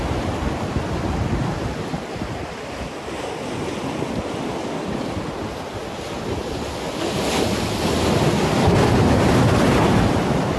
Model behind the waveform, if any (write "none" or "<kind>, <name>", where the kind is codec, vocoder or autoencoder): none